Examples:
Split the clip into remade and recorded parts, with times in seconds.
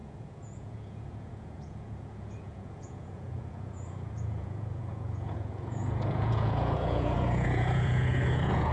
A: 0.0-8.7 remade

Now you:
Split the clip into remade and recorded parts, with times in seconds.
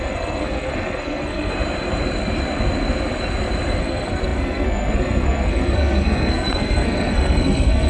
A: 0.0-1.5 remade; 1.5-3.8 recorded; 3.8-7.9 remade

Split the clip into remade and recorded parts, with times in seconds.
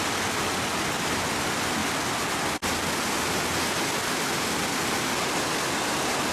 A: 0.0-6.3 recorded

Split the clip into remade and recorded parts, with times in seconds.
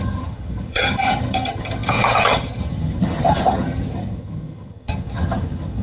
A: 0.0-5.8 remade